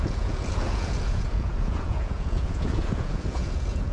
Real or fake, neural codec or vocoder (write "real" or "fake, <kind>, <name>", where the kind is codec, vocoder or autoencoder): fake, vocoder, Vocos